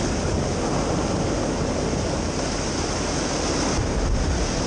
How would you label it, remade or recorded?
recorded